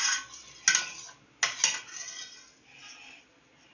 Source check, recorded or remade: recorded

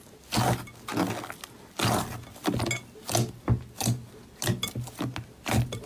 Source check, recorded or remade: recorded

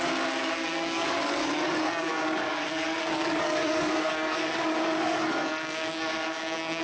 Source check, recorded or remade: remade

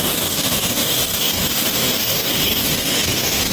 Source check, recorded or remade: remade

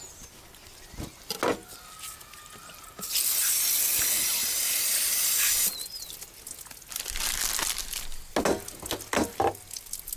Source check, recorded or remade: recorded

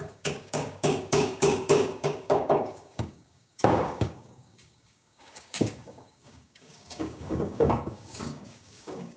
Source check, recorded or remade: remade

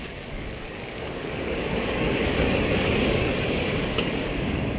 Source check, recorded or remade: remade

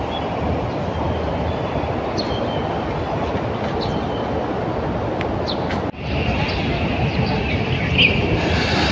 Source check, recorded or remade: recorded